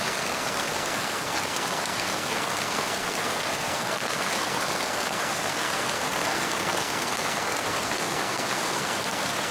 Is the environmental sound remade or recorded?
remade